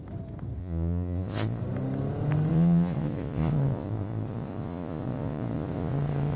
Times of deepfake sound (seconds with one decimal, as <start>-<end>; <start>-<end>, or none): 0.6-1.6; 2.5-6.4